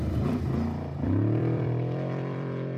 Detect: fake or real fake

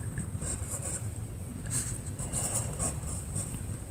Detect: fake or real fake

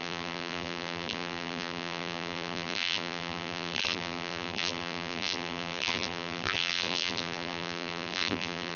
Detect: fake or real fake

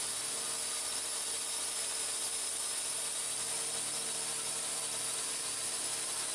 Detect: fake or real real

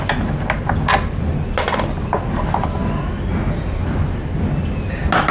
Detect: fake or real real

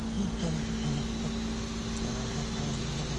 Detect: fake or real real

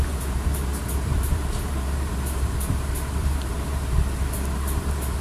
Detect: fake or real fake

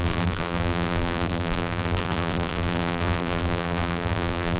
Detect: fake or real fake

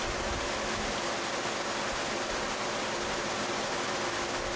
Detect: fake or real real